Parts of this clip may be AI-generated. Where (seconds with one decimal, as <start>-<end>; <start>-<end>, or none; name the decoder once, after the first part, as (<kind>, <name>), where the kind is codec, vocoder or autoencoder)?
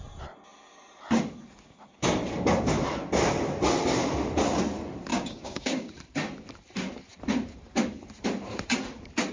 5.1-5.9 (codec, DAC)